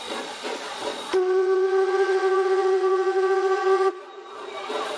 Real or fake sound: fake